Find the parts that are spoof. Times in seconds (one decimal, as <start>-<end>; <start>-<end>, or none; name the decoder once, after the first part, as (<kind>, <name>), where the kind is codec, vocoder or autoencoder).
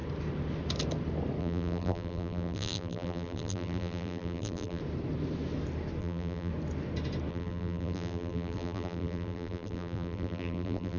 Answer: 1.4-4.8 (vocoder, BigVGAN v2); 6.0-6.5; 7.3-11.0